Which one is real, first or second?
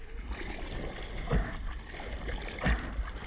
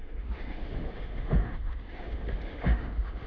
first